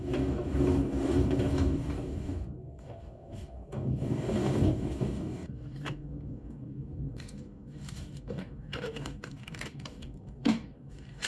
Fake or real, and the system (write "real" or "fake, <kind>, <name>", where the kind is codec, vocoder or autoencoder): fake, codec, DAC